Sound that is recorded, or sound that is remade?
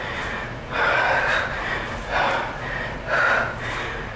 recorded